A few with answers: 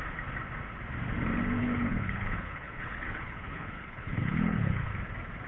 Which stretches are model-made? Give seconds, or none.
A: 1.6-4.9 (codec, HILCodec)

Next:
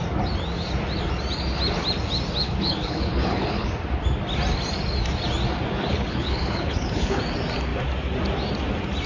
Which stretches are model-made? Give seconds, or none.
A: 2.4-3.7 (codec, HILCodec); 5.9-7.2